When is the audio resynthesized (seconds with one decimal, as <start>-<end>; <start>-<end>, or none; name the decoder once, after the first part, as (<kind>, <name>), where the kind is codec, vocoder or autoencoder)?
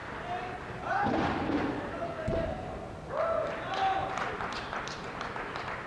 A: 4.0-5.9 (vocoder, BigVGAN v2)